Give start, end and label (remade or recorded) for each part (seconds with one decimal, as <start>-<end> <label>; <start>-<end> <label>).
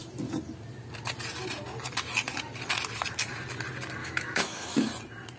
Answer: 0.0-4.0 recorded; 4.0-4.9 remade; 4.9-5.4 recorded